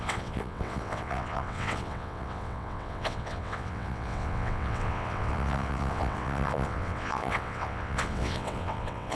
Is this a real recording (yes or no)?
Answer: no